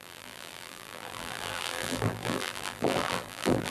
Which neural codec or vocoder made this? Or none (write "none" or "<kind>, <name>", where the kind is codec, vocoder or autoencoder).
vocoder, BigVGAN v2